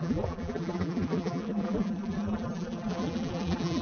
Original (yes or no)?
no